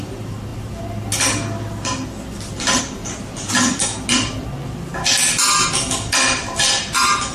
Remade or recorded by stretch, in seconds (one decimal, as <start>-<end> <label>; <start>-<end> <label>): 0.0-7.3 recorded